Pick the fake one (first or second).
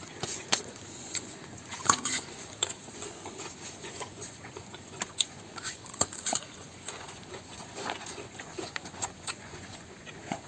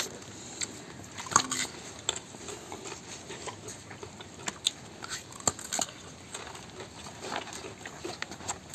first